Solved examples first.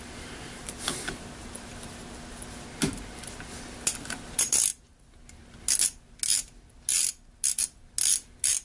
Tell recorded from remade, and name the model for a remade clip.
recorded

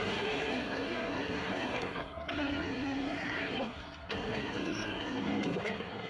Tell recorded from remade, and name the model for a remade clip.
remade, codec, SNAC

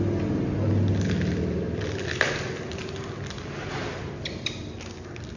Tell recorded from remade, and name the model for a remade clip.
recorded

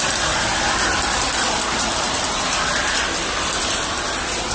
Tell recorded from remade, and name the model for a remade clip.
remade, vocoder, BigVGAN v2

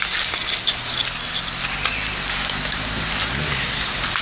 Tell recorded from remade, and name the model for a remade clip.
recorded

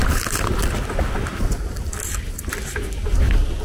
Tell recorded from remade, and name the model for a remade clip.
recorded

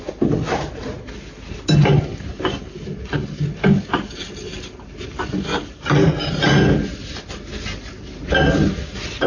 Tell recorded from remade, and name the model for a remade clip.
recorded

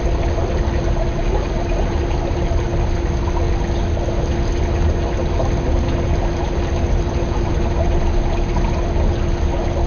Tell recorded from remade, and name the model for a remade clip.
recorded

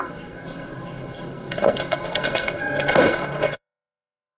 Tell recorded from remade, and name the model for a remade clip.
remade, codec, SNAC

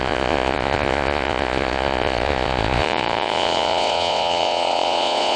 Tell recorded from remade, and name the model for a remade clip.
remade, vocoder, Vocos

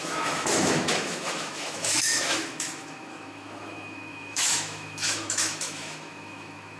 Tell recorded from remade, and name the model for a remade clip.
remade, autoencoder, DAC-VAE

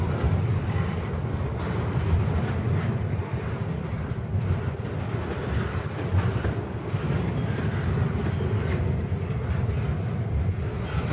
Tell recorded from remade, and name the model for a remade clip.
recorded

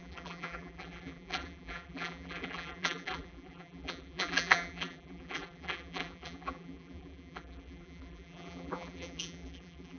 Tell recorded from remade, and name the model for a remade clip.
remade, vocoder, BigVGAN v2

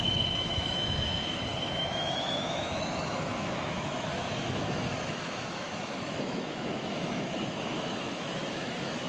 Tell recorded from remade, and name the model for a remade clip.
remade, autoencoder, DAC-VAE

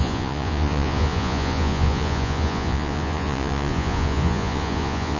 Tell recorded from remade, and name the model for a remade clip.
remade, vocoder, Vocos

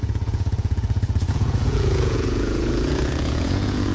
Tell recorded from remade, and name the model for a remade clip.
remade, vocoder, Vocos